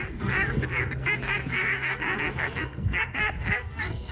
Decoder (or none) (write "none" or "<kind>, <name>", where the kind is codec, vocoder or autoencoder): codec, SNAC